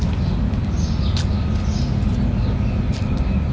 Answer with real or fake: real